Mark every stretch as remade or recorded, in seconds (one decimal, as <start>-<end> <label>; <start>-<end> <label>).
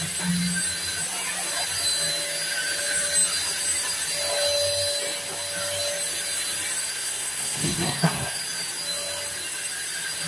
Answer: 0.0-6.9 recorded; 6.9-8.4 remade; 8.4-10.3 recorded